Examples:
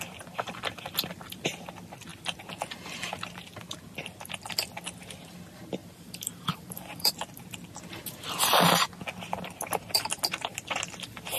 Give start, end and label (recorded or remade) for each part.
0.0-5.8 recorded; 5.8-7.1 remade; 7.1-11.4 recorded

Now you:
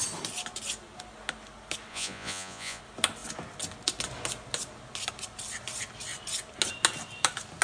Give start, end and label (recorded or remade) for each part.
0.0-1.9 recorded; 1.9-2.8 remade; 2.8-7.6 recorded